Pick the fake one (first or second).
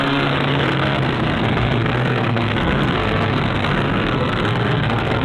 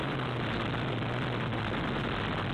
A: first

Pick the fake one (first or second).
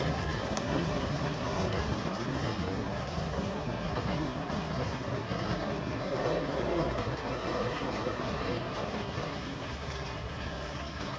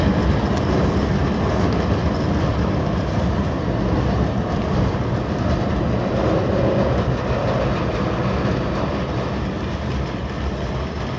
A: first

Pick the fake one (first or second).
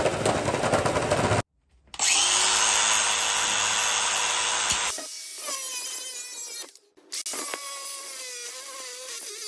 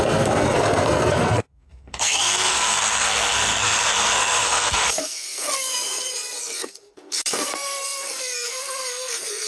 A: second